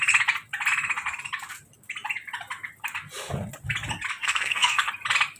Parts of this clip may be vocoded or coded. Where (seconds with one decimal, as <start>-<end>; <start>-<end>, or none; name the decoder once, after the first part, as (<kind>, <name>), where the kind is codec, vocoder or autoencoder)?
4.2-4.9 (codec, SNAC)